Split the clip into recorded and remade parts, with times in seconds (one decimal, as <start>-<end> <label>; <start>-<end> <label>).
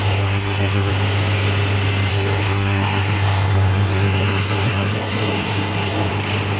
0.0-0.9 remade; 0.9-2.1 recorded; 2.1-6.1 remade; 6.1-6.6 recorded